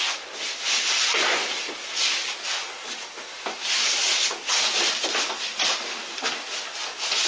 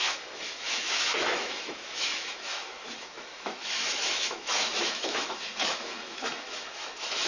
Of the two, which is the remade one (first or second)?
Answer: second